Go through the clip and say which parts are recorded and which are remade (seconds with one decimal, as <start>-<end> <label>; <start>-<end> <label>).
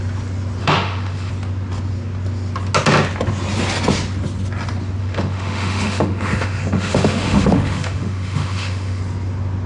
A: 0.0-0.6 recorded; 0.6-1.3 remade; 1.3-5.0 recorded; 5.0-9.0 remade; 9.0-9.7 recorded